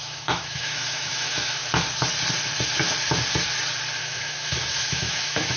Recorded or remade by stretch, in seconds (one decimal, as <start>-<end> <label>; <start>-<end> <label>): 0.0-1.6 remade; 1.6-4.0 recorded; 4.0-5.6 remade